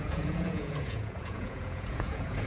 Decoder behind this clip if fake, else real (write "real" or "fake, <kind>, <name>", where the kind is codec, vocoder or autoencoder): fake, vocoder, Vocos